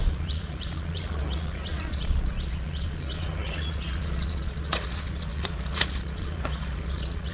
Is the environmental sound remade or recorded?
remade